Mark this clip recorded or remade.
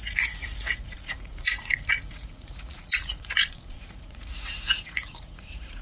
remade